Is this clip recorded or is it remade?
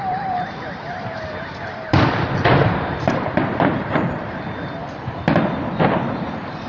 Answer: remade